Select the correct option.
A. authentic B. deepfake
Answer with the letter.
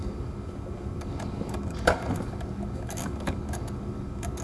B